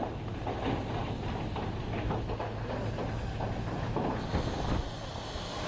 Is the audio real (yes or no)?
yes